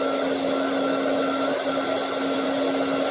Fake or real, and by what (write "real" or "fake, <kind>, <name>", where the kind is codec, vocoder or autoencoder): real